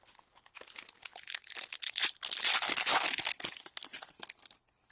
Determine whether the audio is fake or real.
real